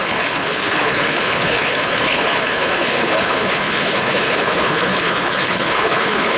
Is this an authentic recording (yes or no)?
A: no